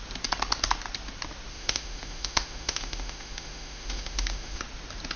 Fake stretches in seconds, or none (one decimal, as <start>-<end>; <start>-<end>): 1.5-4.6